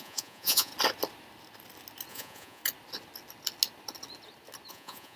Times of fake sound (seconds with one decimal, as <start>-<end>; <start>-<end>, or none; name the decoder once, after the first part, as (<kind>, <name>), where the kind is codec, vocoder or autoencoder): 0.0-0.7 (vocoder, Vocos); 2.1-2.6; 4.7-5.2